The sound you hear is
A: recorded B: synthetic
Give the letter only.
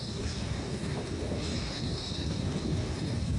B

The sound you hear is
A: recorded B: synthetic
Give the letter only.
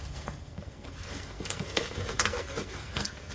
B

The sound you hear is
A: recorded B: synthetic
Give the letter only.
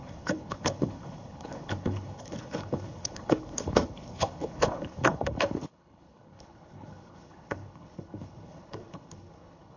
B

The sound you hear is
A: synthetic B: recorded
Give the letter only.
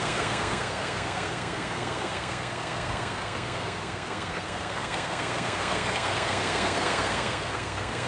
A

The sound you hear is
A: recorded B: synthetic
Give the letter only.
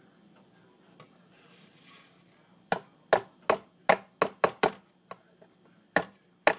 A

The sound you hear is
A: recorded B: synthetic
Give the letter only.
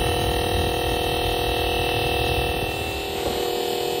A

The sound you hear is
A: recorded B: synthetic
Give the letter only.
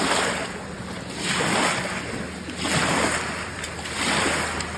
A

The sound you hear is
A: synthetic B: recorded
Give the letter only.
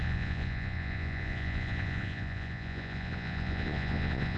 A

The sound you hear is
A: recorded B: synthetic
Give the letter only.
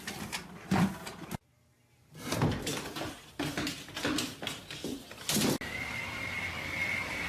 A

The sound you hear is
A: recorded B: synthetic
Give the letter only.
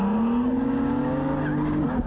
A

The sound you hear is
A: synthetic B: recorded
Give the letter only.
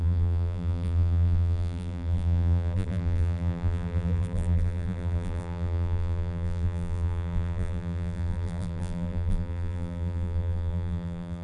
A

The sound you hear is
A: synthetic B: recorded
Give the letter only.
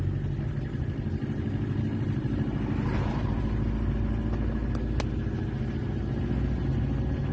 B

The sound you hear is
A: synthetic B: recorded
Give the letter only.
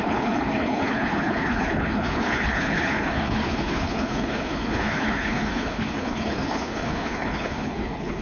A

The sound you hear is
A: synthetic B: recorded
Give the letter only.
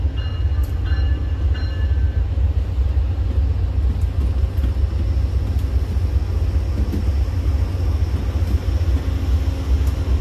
B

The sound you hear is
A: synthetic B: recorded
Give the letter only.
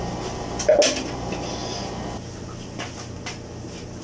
B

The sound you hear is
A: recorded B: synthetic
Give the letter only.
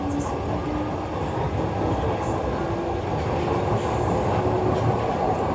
A